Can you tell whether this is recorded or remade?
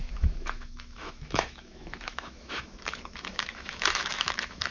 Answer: remade